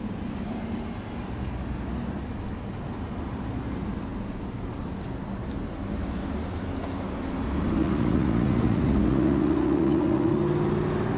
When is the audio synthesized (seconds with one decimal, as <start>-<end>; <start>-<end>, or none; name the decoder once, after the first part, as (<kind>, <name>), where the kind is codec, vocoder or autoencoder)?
7.8-10.4 (vocoder, Vocos)